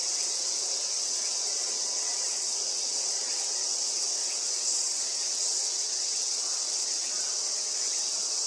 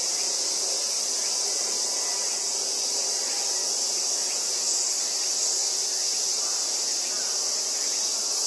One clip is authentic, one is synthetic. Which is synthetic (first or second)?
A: first